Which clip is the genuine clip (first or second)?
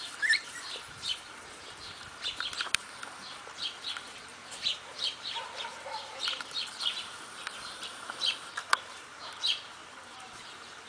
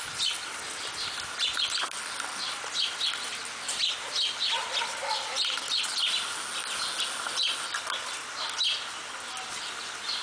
second